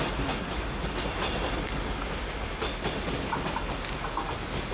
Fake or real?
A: real